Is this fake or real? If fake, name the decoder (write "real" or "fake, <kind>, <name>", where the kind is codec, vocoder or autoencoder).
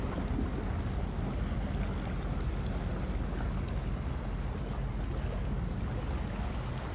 real